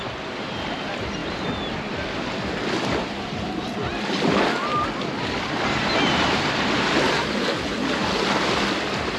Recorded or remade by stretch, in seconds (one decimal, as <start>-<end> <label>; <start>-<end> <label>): 0.0-9.2 recorded